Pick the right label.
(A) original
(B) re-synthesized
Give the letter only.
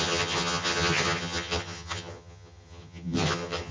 B